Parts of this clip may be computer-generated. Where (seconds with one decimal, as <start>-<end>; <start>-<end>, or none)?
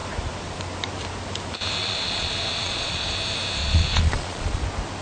1.8-3.1; 3.6-4.6